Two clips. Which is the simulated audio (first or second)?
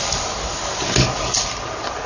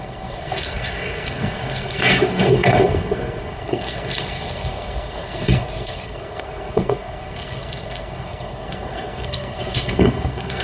second